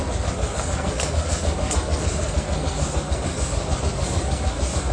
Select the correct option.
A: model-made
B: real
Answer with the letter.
A